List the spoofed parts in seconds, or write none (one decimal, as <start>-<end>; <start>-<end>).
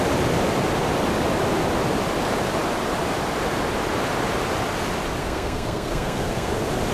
5.2-6.5